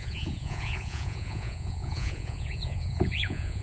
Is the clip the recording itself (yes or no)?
no